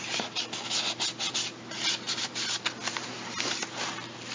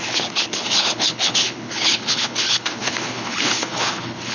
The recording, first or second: first